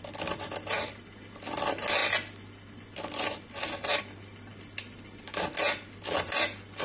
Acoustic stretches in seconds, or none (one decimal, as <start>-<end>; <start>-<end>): 0.0-6.8

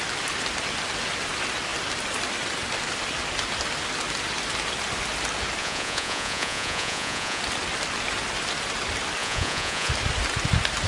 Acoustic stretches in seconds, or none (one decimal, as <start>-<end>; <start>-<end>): 0.0-5.6; 7.4-9.2; 9.9-10.9

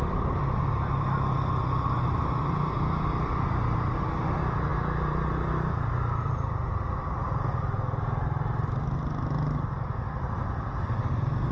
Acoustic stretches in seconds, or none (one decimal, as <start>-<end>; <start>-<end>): 0.0-11.5

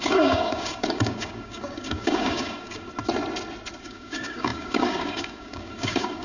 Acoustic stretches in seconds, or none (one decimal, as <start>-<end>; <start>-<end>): 2.9-3.8